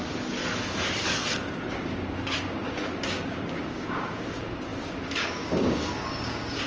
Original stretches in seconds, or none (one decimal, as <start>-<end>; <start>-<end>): 0.4-1.4